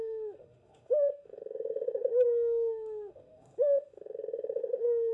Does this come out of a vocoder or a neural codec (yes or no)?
yes